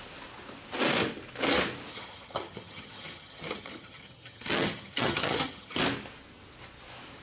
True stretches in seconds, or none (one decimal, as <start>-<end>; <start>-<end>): 0.0-1.9; 5.8-7.2